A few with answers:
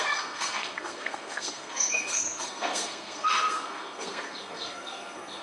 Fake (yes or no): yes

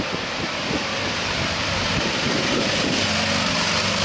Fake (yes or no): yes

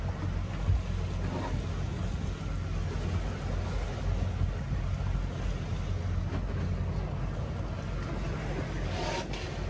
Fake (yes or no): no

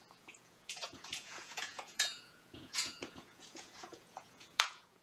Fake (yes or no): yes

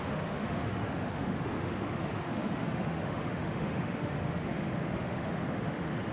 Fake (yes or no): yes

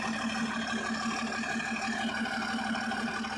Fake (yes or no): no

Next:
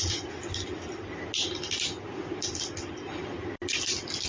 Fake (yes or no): no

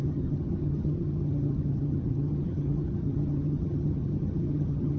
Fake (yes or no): yes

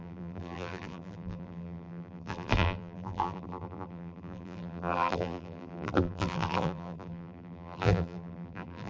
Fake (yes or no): yes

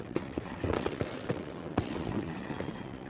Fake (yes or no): yes